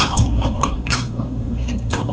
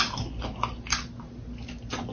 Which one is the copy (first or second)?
first